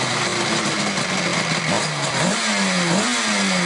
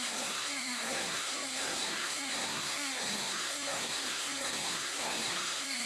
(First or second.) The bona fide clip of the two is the first